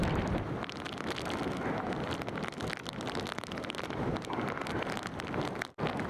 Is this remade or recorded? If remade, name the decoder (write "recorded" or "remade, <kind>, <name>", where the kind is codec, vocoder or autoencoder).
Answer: recorded